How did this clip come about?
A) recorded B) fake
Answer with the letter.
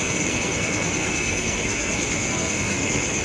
B